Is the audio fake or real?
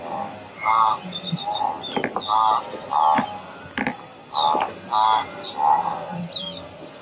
real